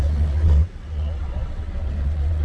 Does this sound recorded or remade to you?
remade